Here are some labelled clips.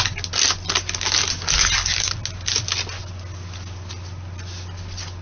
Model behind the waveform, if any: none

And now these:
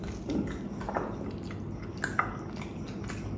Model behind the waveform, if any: none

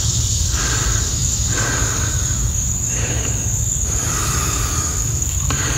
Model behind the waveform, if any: codec, DAC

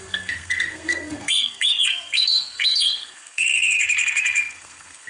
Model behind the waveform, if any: codec, SNAC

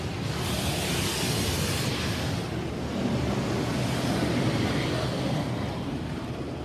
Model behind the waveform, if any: none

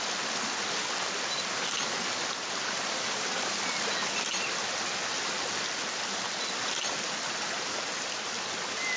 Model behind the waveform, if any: none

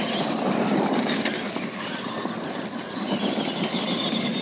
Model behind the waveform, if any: vocoder, BigVGAN v2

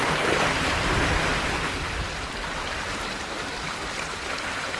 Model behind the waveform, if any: none